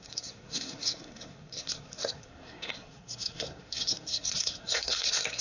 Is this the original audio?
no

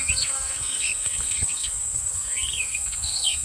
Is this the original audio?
no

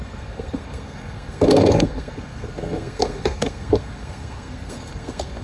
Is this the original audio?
no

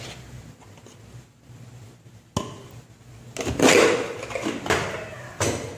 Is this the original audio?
yes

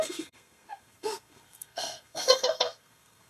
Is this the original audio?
no